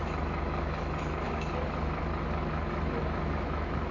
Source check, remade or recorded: remade